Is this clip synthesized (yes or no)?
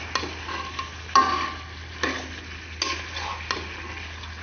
no